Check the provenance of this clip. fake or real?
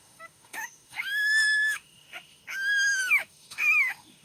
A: fake